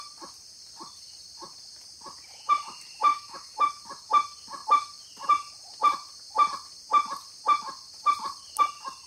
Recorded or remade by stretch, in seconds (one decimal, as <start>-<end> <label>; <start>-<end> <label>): 0.0-3.1 recorded; 3.1-3.7 remade; 3.7-9.1 recorded